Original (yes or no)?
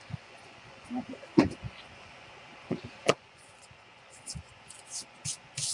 no